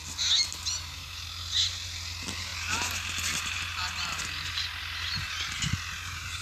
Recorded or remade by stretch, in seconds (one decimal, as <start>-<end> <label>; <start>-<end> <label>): 0.0-6.4 recorded